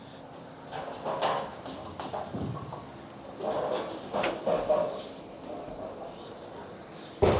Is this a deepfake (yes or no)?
no